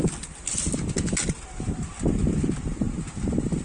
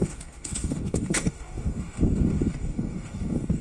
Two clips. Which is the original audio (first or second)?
first